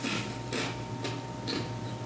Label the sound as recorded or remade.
recorded